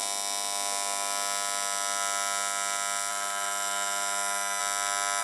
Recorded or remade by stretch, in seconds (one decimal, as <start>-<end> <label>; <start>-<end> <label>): 0.0-3.1 recorded; 3.1-4.6 remade; 4.6-5.2 recorded